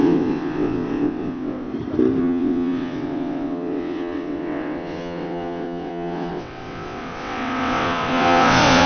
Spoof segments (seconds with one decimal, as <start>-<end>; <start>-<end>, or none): 0.0-1.7; 2.2-8.9

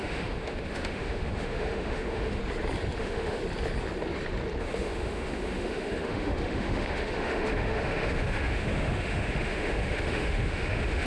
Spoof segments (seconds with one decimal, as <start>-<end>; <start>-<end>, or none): 0.0-2.4; 3.0-3.4; 4.6-11.1

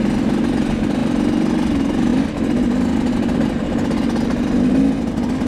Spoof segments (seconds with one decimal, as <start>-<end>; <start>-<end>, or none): 1.0-1.5

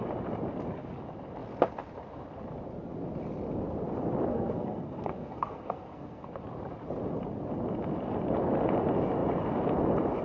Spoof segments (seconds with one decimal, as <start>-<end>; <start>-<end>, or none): 4.3-6.4

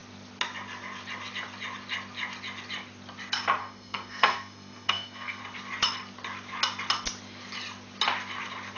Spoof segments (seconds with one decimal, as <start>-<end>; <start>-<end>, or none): 3.6-5.4

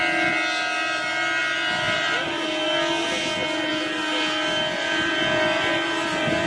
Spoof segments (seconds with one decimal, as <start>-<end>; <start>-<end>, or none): none

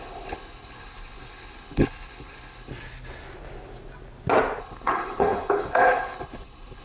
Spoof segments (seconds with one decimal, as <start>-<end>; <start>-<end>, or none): 0.0-2.7; 4.6-6.8